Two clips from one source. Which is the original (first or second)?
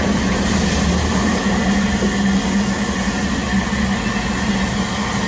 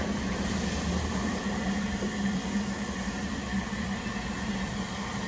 first